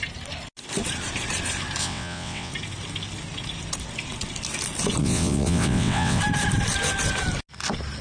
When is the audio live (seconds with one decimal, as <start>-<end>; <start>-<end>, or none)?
0.0-1.8; 2.5-5.0; 6.2-8.0